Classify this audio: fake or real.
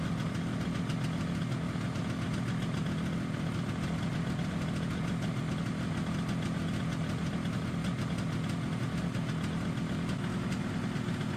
real